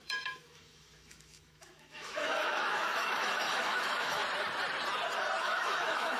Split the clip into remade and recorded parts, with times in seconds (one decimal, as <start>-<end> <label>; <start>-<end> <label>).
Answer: 0.0-4.2 remade; 4.2-5.4 recorded; 5.4-6.2 remade